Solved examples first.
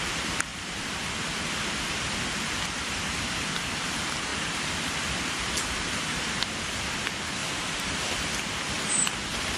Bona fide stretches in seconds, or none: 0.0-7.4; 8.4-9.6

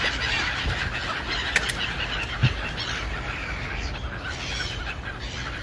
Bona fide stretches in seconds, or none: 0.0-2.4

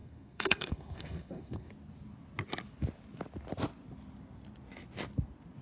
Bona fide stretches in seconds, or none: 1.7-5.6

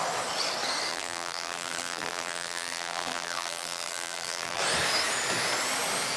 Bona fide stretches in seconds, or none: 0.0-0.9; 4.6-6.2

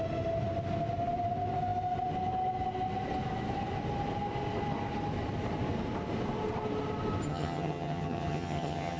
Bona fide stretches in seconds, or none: 0.0-7.3

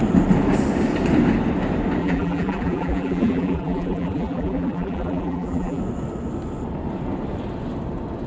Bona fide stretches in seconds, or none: 0.0-2.0; 5.8-8.3